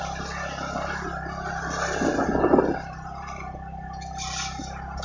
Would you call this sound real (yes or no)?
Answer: yes